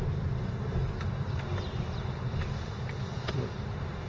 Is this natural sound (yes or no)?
yes